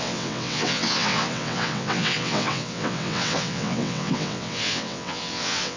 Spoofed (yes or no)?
yes